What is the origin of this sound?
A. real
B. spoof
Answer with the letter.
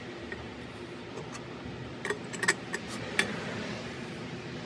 A